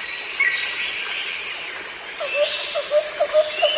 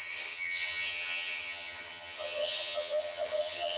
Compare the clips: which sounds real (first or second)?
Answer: first